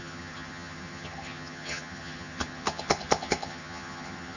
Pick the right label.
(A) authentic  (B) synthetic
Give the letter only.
B